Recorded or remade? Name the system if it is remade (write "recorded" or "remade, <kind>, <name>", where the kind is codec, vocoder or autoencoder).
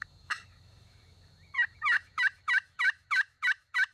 remade, autoencoder, DAC-VAE